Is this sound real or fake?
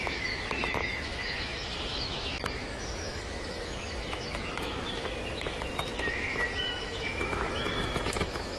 fake